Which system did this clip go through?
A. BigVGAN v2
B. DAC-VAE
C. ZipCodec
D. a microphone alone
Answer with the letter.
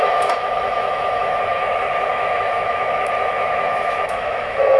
B